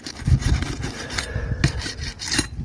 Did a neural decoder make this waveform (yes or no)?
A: no